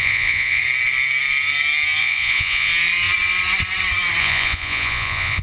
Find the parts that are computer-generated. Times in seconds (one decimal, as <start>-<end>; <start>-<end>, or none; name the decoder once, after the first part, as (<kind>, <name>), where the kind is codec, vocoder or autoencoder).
0.0-0.6 (vocoder, Vocos); 2.0-2.7; 4.2-5.4